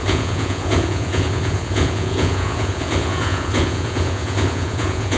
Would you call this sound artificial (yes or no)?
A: yes